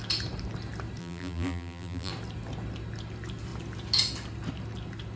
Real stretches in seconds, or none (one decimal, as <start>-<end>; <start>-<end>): 0.0-1.0; 2.1-5.2